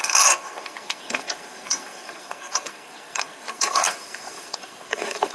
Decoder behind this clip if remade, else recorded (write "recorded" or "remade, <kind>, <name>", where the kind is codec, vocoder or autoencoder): remade, codec, SNAC